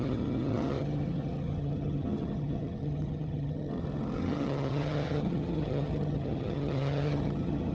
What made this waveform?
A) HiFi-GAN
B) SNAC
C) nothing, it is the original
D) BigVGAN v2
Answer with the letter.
A